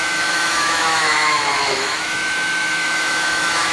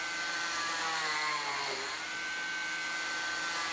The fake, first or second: first